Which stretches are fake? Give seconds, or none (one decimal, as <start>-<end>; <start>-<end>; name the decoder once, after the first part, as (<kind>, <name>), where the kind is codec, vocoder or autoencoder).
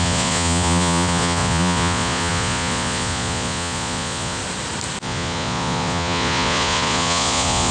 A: 0.0-4.4 (vocoder, Vocos); 5.0-7.7